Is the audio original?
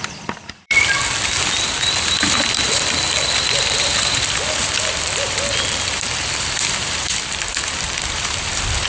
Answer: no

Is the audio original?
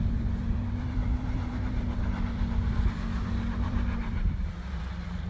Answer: no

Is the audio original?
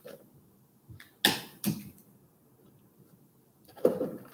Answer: yes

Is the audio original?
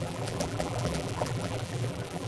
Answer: no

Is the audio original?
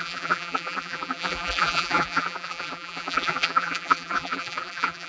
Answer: no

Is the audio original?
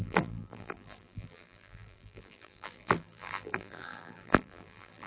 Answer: no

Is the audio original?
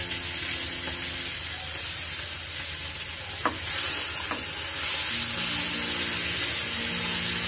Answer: yes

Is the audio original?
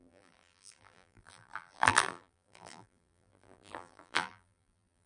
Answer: no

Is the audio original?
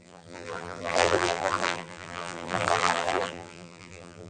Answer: no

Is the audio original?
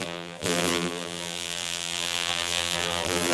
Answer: no